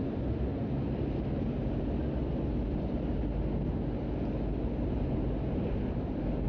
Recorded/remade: recorded